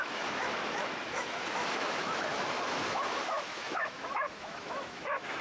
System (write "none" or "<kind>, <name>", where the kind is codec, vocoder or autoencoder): autoencoder, DAC-VAE